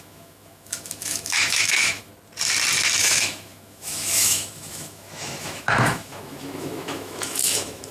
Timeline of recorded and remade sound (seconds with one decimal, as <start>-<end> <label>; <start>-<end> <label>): 0.0-2.1 remade; 2.1-3.0 recorded; 3.0-7.9 remade